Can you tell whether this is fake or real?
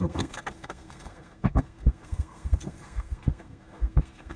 fake